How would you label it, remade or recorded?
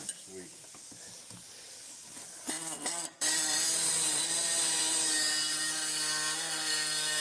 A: recorded